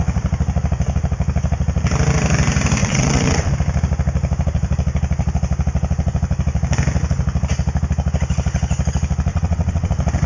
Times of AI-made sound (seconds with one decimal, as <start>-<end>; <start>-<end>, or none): 2.8-3.5; 9.3-9.9